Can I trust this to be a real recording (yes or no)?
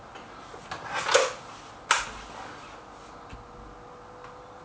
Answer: yes